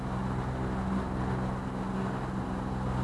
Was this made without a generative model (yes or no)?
yes